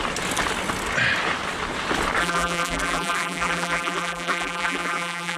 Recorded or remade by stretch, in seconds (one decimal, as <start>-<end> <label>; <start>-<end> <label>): 0.0-2.2 recorded; 2.2-5.4 remade